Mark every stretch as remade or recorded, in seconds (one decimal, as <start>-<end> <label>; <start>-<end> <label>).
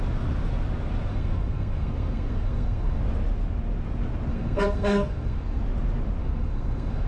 0.0-1.1 recorded; 1.1-3.0 remade; 3.0-4.3 recorded; 4.3-5.6 remade; 5.6-6.2 recorded; 6.2-7.1 remade